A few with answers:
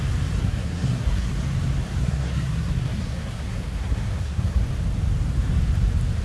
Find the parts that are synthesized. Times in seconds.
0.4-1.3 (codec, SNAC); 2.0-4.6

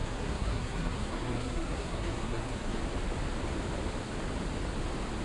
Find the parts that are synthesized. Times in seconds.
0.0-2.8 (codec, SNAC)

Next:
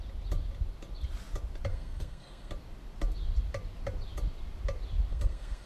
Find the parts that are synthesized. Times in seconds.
1.7-2.5 (codec, SNAC); 5.1-5.7

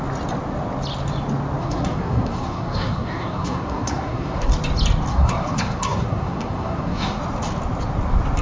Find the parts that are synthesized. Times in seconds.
1.6-4.5 (codec, SNAC); 5.1-7.2